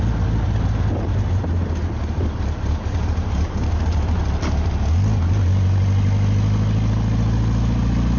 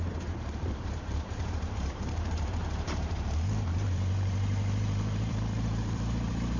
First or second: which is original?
first